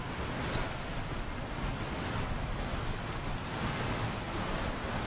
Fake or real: real